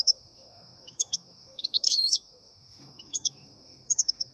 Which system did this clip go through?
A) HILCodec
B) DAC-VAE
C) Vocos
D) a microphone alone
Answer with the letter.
B